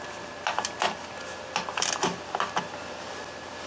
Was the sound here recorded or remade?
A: recorded